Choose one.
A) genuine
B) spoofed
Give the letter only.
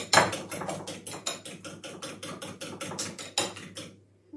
A